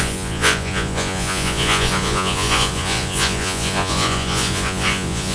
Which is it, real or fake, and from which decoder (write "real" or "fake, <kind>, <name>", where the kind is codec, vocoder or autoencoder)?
fake, vocoder, Vocos